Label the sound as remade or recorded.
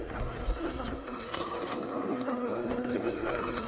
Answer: remade